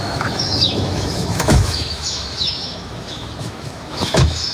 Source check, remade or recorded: remade